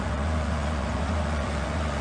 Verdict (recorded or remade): remade